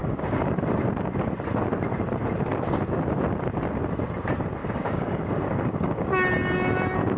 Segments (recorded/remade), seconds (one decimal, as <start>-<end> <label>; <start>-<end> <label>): 0.0-0.6 remade; 0.6-4.6 recorded; 4.6-6.1 remade; 6.1-7.2 recorded